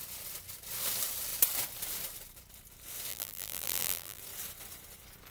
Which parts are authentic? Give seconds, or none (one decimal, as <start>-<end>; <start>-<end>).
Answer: 0.0-3.1; 4.2-5.3